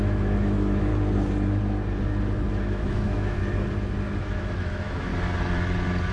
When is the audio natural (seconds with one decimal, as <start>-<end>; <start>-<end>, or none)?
0.9-2.5; 3.4-4.2; 5.1-6.1